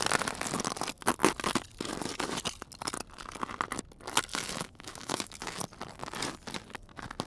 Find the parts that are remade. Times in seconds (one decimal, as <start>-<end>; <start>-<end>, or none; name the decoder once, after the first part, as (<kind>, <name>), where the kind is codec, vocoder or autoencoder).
4.3-5.6 (autoencoder, DAC-VAE)